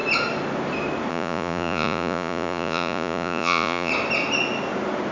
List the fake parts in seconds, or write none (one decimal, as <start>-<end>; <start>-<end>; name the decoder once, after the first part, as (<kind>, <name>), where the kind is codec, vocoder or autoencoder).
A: 1.1-3.9 (vocoder, Vocos)